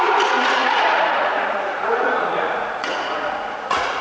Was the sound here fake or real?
fake